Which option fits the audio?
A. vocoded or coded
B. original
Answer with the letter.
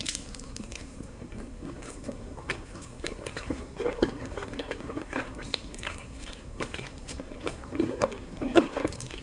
A